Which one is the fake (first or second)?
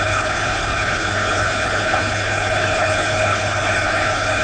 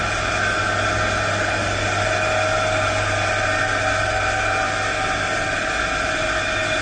first